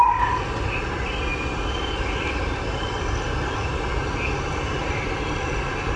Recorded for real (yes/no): yes